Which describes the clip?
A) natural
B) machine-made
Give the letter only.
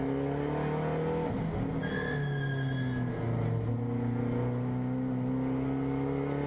A